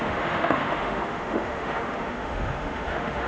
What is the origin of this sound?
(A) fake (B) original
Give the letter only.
A